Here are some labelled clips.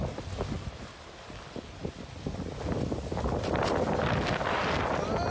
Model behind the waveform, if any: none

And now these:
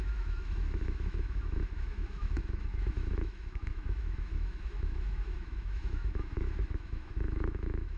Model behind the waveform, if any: autoencoder, DAC-VAE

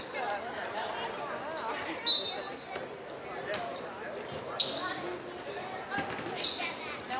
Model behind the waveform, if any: none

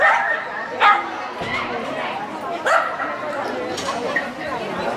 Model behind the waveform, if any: none